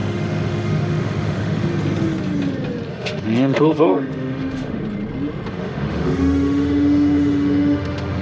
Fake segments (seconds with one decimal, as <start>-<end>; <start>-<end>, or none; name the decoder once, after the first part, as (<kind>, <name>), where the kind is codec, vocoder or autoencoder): 0.0-1.7 (autoencoder, DAC-VAE); 2.9-4.8; 5.5-8.2